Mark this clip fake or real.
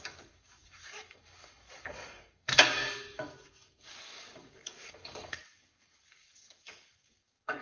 fake